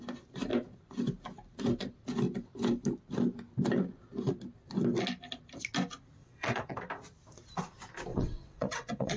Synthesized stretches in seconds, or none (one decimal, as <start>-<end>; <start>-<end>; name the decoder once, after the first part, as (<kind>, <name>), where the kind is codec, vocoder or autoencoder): 6.2-6.8 (vocoder, WaveNeXt); 8.1-9.2